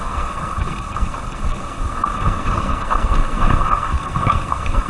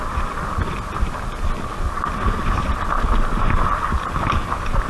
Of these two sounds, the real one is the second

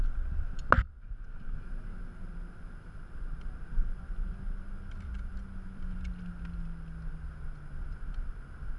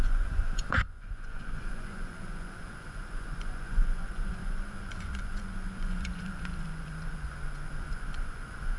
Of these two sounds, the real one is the first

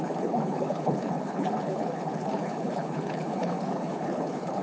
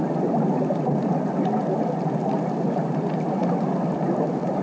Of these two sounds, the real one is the second